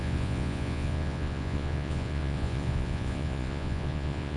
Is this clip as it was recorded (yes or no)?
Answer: no